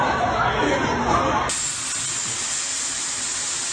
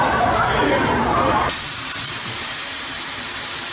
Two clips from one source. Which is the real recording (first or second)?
first